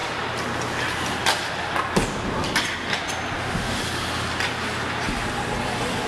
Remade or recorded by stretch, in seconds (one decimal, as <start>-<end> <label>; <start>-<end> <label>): 0.0-3.4 recorded; 3.4-3.8 remade; 3.8-6.1 recorded